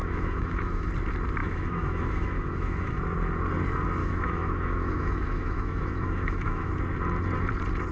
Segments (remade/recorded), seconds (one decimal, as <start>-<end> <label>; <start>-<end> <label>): 0.0-0.9 remade; 0.9-1.4 recorded; 1.4-3.0 remade; 3.0-4.0 recorded; 4.0-6.7 remade; 6.7-7.9 recorded